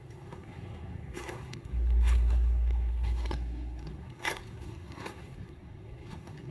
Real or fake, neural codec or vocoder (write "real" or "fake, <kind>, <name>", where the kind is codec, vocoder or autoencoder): fake, codec, SNAC